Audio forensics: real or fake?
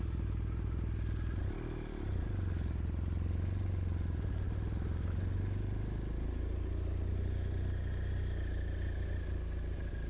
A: real